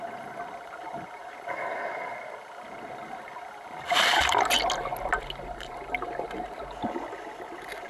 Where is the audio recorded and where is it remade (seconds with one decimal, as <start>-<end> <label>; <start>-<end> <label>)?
0.0-7.9 recorded